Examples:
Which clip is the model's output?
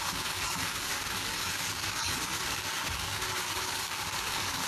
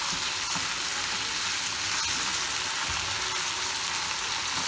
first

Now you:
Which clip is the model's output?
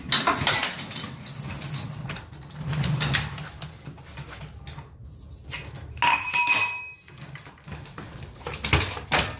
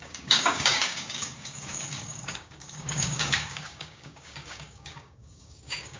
second